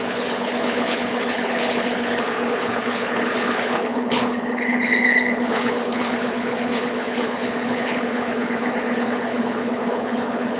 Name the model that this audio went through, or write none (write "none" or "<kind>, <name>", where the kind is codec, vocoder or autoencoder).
codec, HILCodec